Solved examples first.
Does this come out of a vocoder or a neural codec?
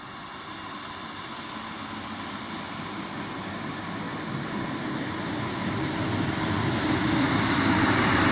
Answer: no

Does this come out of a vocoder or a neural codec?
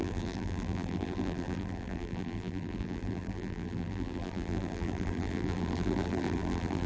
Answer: yes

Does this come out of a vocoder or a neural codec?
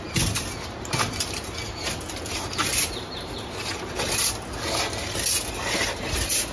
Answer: no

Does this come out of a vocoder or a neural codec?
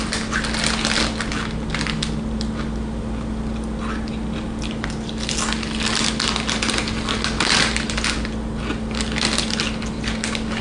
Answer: no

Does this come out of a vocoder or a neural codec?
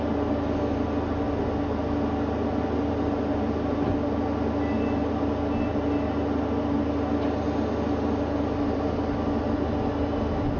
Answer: no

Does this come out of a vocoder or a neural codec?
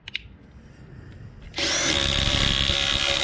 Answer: no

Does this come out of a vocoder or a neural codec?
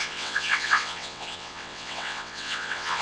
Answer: yes